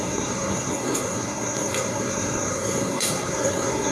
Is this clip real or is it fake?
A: fake